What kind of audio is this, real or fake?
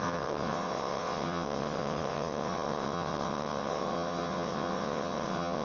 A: fake